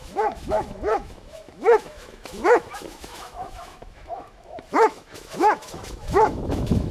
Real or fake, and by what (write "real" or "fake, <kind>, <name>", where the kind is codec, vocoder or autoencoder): fake, autoencoder, DAC-VAE